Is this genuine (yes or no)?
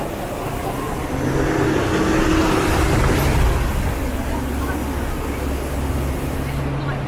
yes